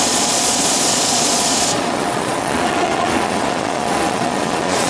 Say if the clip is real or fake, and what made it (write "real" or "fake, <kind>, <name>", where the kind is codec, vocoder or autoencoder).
fake, vocoder, Vocos